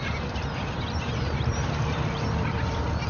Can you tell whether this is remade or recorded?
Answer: recorded